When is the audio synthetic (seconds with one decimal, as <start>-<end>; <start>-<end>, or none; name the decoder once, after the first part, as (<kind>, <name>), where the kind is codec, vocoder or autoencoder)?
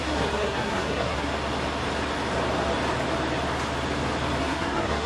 0.0-1.3 (codec, SNAC); 4.4-5.1